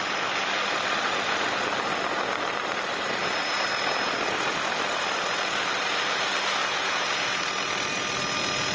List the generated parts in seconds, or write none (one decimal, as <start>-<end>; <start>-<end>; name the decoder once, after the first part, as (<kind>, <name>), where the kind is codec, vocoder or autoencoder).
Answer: 6.6-7.4 (vocoder, Vocos)